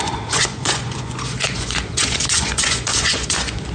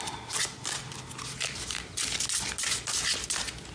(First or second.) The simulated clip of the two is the first